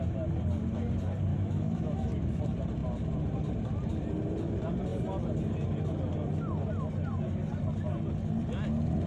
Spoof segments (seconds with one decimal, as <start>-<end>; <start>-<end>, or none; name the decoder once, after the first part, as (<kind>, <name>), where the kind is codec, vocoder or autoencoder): 1.3-2.4 (autoencoder, DAC-VAE)